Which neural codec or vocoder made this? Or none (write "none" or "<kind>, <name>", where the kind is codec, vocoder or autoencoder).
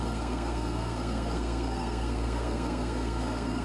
codec, SNAC